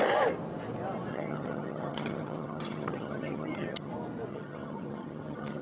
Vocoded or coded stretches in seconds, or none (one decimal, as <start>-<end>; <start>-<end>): 1.1-3.9; 4.3-5.6